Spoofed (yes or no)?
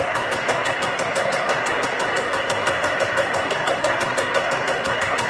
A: yes